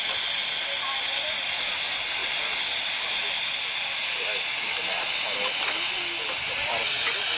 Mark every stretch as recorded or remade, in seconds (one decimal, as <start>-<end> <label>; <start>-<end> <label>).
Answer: 0.0-7.4 recorded